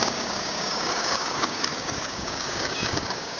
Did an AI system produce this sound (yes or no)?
yes